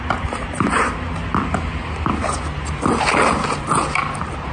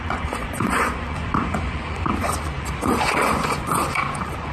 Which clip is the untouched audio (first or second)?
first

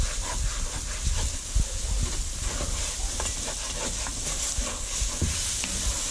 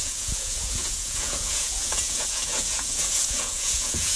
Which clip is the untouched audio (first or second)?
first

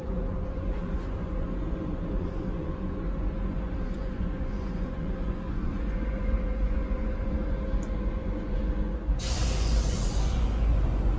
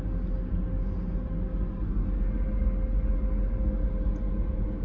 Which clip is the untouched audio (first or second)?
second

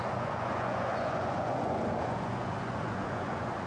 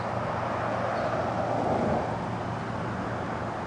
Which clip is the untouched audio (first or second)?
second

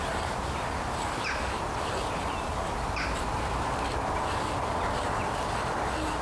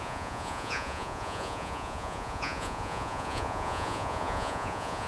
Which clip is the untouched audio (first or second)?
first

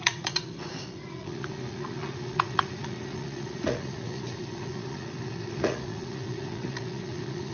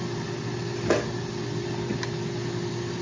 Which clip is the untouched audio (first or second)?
second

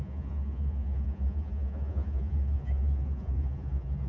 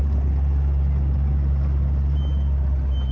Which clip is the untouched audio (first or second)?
second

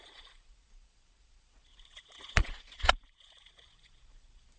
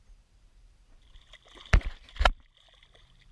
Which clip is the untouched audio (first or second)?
second